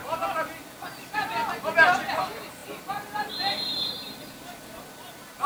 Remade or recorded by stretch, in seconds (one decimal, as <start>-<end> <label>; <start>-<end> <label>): 0.0-0.7 remade; 0.7-2.6 recorded; 2.6-3.8 remade; 3.8-5.5 recorded